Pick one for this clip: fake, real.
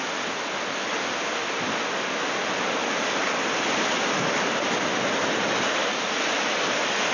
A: real